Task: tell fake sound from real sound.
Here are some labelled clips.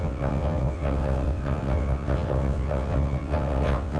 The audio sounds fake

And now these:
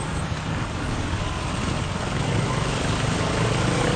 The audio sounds fake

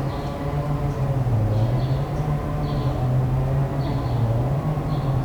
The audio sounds real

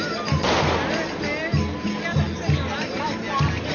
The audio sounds real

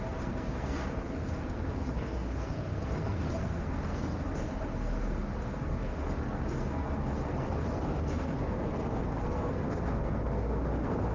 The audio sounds fake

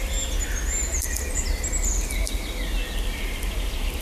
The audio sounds real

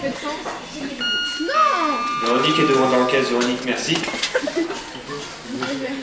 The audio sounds real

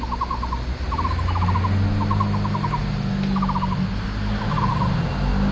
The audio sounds real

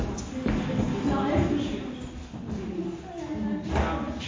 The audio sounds real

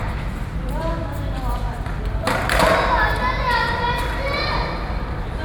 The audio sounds real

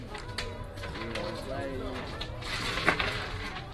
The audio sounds real